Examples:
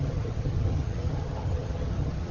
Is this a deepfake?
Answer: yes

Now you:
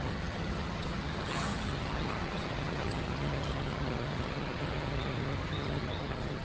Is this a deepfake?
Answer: yes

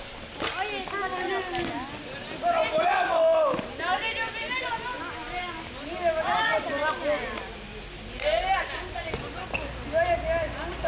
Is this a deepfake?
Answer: no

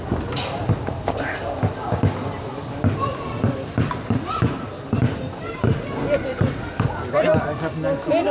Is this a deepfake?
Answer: no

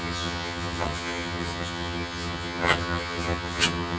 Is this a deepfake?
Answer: yes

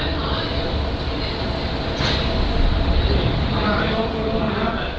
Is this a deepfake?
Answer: no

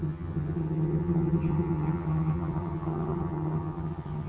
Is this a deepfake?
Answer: yes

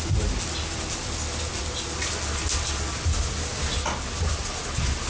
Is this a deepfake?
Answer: no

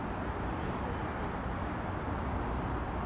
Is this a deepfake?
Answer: no